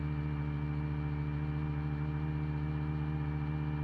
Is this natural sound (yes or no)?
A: yes